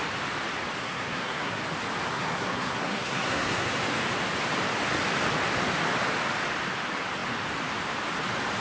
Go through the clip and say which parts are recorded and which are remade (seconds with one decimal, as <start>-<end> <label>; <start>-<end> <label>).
0.0-0.8 recorded; 0.8-1.6 remade; 1.6-2.1 recorded; 2.1-3.7 remade; 3.7-8.6 recorded